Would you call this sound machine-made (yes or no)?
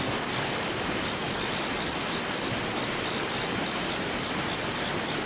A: no